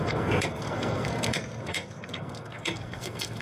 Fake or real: fake